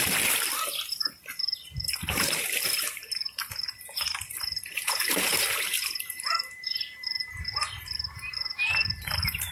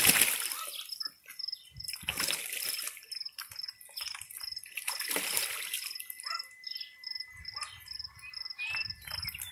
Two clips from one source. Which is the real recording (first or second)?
second